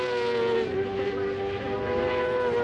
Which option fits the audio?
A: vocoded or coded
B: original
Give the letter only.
B